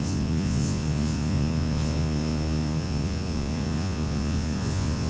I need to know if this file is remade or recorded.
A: remade